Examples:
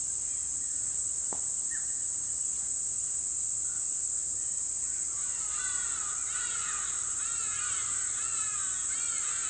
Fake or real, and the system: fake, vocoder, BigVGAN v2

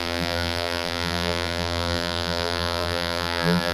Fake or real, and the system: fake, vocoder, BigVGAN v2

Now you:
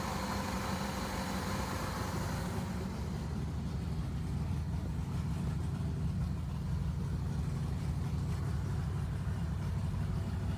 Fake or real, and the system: real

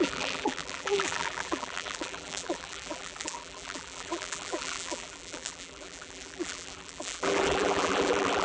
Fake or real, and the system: fake, vocoder, BigVGAN v2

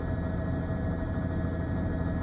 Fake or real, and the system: real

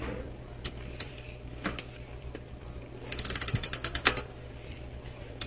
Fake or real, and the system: fake, vocoder, BigVGAN v2